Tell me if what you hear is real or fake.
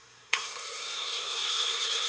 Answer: fake